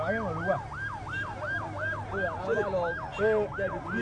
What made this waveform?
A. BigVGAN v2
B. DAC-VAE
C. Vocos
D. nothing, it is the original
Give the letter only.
D